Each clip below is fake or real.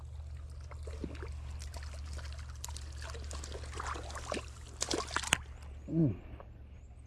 real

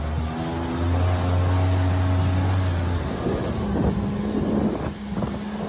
real